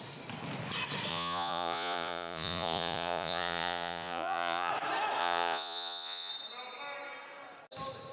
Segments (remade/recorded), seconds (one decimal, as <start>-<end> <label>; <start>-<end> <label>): 0.0-1.1 recorded; 1.1-4.7 remade; 4.7-5.2 recorded; 5.2-6.3 remade; 6.3-8.1 recorded